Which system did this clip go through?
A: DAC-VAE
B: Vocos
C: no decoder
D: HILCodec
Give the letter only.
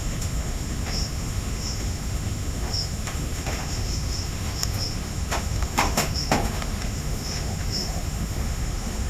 A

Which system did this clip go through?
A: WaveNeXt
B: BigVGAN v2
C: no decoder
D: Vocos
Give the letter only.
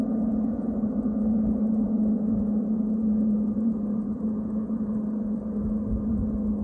D